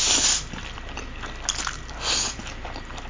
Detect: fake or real real